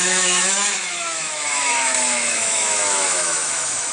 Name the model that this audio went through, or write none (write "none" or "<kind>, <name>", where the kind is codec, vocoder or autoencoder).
autoencoder, DAC-VAE